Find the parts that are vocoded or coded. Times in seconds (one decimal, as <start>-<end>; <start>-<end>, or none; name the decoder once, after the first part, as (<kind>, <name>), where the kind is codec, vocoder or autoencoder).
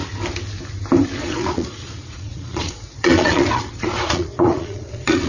1.2-5.3 (vocoder, Vocos)